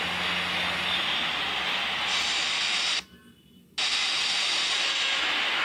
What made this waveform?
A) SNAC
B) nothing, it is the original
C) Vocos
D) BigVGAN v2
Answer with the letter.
B